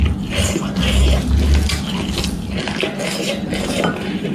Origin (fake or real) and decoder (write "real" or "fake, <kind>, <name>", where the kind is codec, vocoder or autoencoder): real